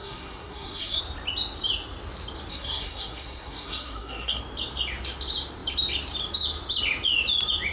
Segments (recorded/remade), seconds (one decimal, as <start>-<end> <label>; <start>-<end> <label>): 0.0-1.0 remade; 1.0-2.5 recorded; 2.5-4.4 remade; 4.4-7.7 recorded